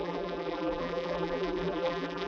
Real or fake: fake